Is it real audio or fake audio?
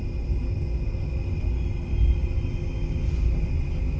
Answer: real